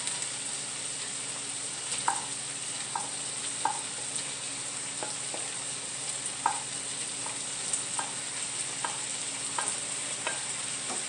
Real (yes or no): yes